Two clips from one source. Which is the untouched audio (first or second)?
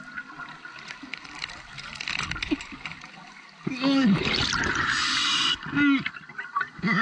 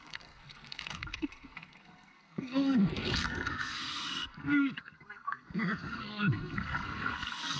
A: first